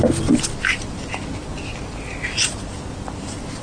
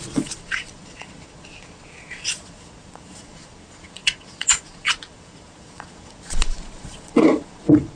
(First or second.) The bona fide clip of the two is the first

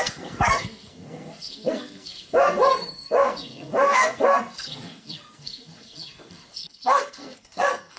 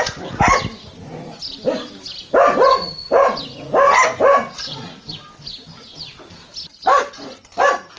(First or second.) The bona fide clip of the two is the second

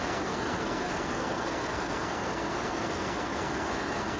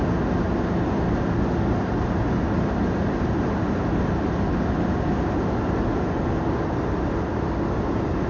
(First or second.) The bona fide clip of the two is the second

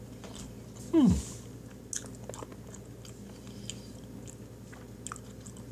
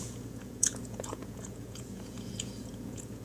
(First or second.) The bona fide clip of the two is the first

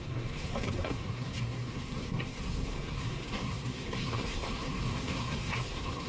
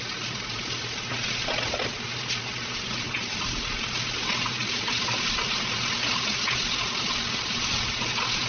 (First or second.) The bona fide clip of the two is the second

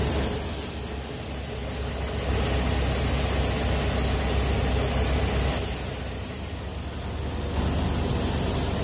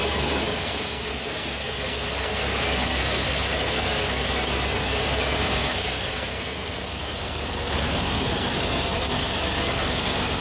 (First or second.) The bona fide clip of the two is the first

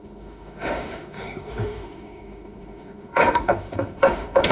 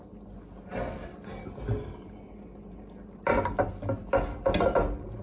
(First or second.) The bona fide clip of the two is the second